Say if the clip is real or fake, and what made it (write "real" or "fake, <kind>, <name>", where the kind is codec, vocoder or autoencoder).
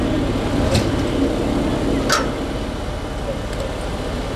real